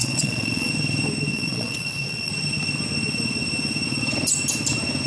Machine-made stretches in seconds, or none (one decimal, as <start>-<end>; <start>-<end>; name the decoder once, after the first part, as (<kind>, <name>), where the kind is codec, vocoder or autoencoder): 0.0-0.7 (vocoder, Vocos); 1.3-2.3